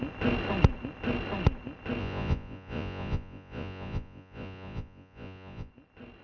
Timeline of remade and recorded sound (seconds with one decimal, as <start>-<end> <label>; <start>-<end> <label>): 0.0-2.0 recorded; 2.0-5.7 remade; 5.7-6.2 recorded